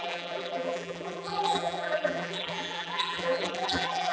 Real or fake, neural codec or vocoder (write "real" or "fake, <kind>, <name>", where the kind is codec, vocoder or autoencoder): fake, vocoder, BigVGAN v2